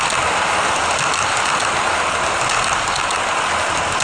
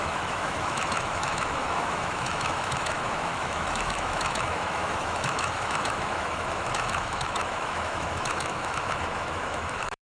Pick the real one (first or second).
first